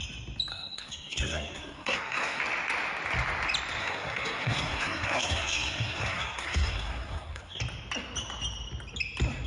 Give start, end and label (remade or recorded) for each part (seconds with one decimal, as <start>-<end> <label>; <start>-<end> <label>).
0.0-0.5 recorded; 0.5-2.4 remade; 2.4-3.8 recorded; 3.8-7.6 remade; 7.6-9.5 recorded